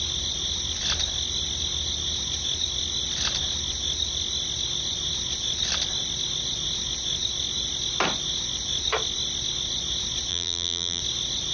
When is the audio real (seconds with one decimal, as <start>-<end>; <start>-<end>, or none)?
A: 0.0-10.3; 11.0-11.5